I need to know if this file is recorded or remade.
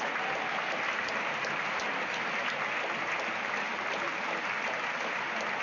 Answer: recorded